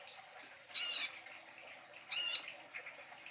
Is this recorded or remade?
recorded